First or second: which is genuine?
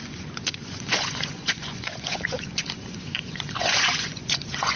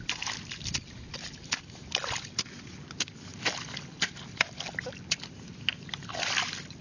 second